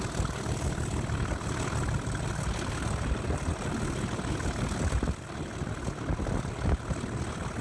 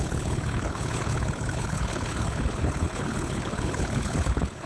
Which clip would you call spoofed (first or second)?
second